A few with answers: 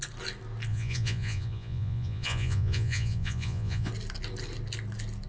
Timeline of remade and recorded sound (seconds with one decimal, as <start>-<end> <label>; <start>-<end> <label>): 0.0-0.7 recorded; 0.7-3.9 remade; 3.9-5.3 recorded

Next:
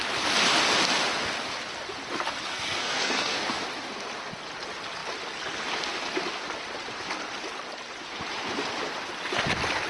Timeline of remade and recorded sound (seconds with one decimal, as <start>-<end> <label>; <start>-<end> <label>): 0.0-2.5 recorded; 2.5-3.6 remade; 3.6-9.9 recorded

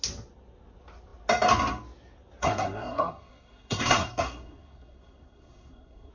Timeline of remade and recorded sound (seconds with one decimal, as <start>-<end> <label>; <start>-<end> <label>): 0.0-2.4 recorded; 2.4-6.1 remade

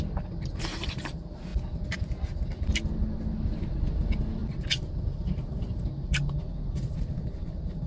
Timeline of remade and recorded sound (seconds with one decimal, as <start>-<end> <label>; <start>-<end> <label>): 0.0-7.9 recorded

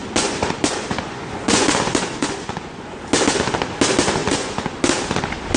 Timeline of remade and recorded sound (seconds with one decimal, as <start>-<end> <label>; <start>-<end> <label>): 0.0-3.0 remade; 3.0-4.2 recorded; 4.2-4.8 remade; 4.8-5.6 recorded